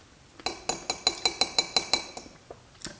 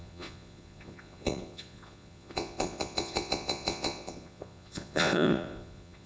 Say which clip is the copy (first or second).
second